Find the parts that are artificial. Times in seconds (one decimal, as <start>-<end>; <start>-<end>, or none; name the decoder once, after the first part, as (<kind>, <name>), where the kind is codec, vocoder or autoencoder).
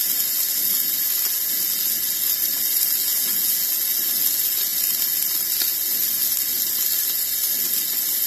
3.0-3.6 (vocoder, Vocos)